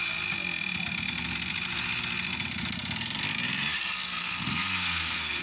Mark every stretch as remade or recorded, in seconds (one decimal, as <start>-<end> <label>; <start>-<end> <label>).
0.0-4.2 recorded; 4.2-5.4 remade